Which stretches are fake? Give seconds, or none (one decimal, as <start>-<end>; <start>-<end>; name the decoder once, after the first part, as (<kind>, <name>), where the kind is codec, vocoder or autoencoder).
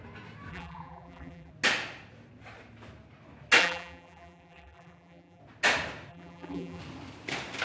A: 0.5-1.5 (vocoder, BigVGAN v2); 3.6-5.4; 6.1-6.8